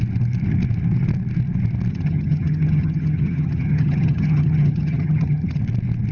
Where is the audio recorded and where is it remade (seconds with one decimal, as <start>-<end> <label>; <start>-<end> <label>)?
0.0-1.9 recorded; 1.9-5.6 remade; 5.6-6.1 recorded